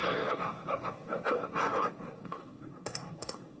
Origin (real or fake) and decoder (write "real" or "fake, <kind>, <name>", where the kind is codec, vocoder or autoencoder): fake, codec, SNAC